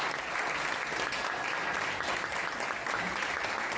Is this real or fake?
real